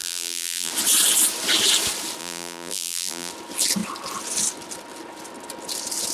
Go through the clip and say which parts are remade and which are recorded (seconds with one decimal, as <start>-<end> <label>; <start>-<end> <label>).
0.0-0.7 remade; 0.7-2.2 recorded; 2.2-3.3 remade; 3.3-6.1 recorded